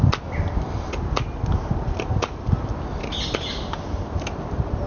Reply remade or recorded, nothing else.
recorded